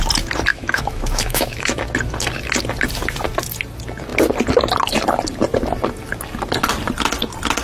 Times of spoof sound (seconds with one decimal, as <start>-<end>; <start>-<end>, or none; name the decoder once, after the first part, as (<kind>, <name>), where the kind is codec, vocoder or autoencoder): 0.5-1.8 (autoencoder, DAC-VAE)

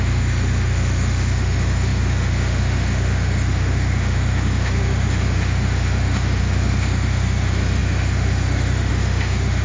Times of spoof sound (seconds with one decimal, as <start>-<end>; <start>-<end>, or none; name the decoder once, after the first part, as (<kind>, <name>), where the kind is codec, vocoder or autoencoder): 0.0-9.6 (autoencoder, DAC-VAE)